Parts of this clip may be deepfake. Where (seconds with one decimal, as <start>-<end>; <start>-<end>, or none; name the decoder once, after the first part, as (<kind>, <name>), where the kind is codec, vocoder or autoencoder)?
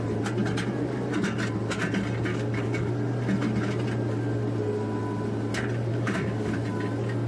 2.3-2.9 (codec, DAC); 5.9-6.5